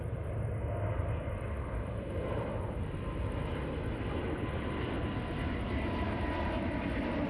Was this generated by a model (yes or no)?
no